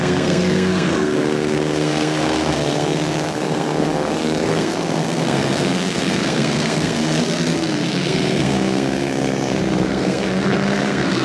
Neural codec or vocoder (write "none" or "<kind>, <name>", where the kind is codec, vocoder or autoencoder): codec, SNAC